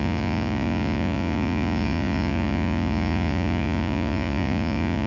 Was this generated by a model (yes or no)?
yes